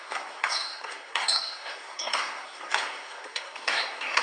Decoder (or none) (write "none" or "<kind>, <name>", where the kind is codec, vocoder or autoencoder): codec, SNAC